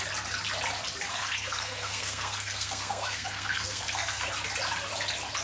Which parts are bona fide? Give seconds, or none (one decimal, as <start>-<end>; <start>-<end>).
0.0-1.1; 4.3-5.4